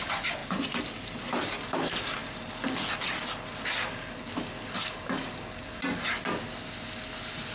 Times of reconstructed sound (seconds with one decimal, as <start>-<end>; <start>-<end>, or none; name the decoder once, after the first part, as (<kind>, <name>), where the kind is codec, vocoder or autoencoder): none